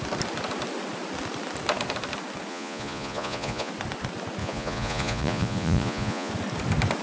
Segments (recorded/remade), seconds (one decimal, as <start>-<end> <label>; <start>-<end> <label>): 0.0-2.5 recorded; 2.5-3.7 remade; 3.7-4.4 recorded; 4.4-6.3 remade; 6.3-7.0 recorded